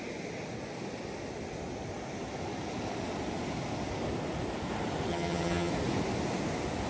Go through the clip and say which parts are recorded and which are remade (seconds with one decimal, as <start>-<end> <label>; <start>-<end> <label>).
0.0-5.1 recorded; 5.1-5.7 remade; 5.7-6.9 recorded